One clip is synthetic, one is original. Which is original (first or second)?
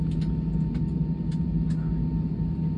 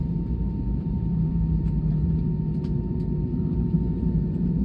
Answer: first